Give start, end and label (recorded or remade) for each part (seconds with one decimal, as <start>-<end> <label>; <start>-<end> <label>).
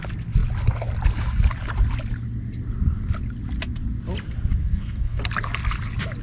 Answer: 0.0-4.6 recorded; 4.6-5.2 remade; 5.2-6.2 recorded